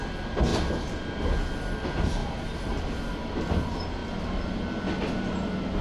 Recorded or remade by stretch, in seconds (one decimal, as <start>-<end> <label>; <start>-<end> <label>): 0.0-5.8 recorded